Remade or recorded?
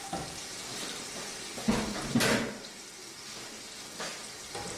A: recorded